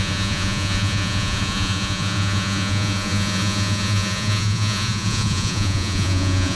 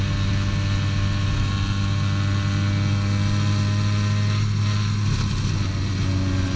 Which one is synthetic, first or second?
first